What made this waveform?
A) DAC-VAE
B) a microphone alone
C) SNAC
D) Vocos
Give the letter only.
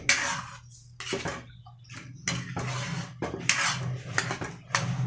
B